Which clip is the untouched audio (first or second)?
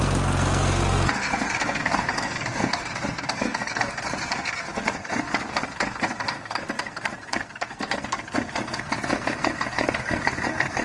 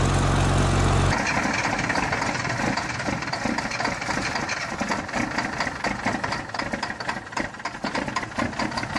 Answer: second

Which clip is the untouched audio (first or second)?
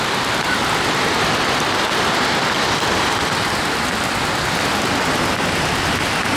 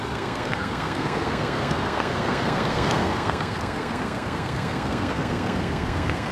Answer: first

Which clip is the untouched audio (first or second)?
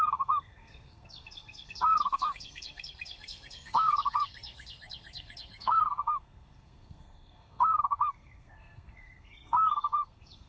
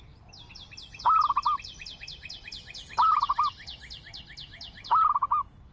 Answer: second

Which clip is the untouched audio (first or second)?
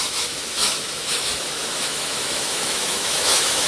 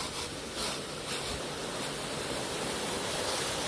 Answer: second